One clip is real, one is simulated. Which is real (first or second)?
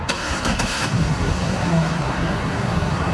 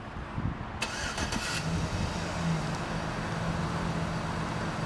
second